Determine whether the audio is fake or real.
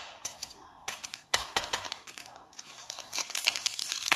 fake